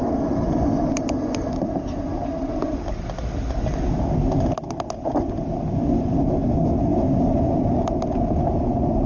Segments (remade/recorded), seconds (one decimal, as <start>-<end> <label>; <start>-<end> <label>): 0.0-9.1 recorded

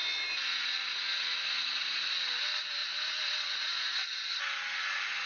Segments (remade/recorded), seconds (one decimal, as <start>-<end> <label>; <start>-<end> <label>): 0.0-5.3 recorded

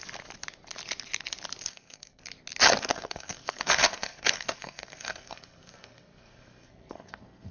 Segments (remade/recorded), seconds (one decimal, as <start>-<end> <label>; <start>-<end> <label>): 0.0-1.7 recorded; 1.7-2.2 remade; 2.2-2.9 recorded; 2.9-7.5 remade

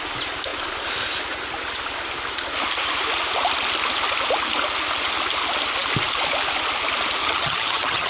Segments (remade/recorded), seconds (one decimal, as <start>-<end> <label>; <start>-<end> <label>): 0.0-7.2 recorded; 7.2-8.1 remade

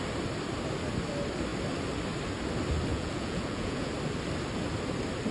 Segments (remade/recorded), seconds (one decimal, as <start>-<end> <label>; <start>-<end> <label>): 0.0-2.9 recorded; 2.9-3.9 remade; 3.9-5.3 recorded